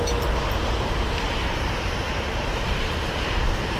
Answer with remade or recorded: recorded